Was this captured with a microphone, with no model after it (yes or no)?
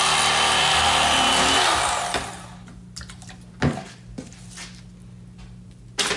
yes